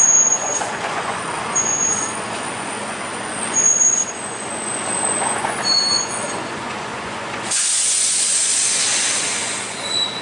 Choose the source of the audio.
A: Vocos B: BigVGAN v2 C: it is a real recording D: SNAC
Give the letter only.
A